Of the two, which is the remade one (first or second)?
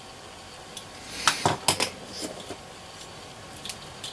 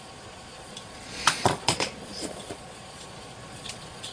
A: second